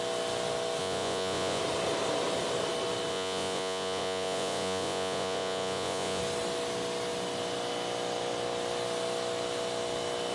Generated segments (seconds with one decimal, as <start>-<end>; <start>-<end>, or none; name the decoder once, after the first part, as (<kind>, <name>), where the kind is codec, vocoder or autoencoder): 0.8-1.6 (vocoder, Vocos); 3.1-6.2